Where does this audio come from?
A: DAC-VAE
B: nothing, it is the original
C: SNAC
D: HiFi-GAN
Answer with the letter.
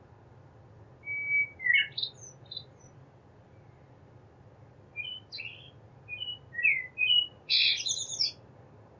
B